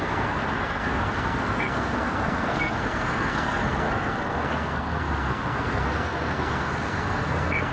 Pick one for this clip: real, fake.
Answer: fake